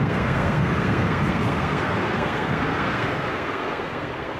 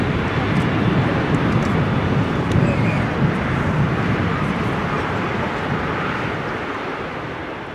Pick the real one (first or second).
second